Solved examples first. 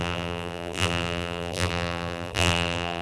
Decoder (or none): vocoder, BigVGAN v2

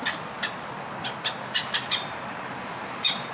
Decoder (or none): none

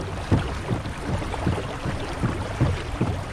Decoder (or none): vocoder, BigVGAN v2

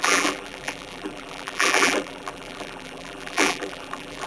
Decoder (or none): vocoder, BigVGAN v2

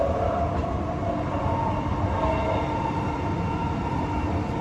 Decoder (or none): none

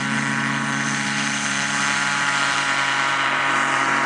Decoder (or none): vocoder, BigVGAN v2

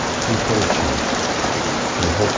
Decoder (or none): vocoder, BigVGAN v2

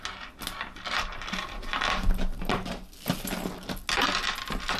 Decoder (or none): none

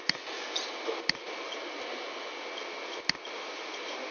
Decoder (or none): none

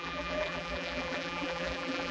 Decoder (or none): vocoder, BigVGAN v2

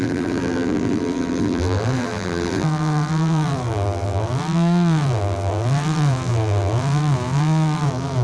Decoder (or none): vocoder, BigVGAN v2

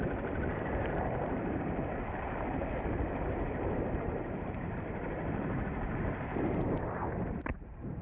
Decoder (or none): vocoder, BigVGAN v2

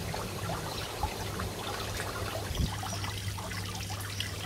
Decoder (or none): none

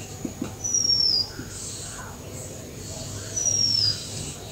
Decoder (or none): none